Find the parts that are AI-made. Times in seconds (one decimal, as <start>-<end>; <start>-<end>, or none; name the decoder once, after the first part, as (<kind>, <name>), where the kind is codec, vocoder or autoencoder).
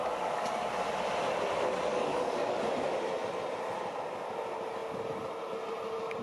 0.0-0.6 (codec, DAC); 1.9-2.6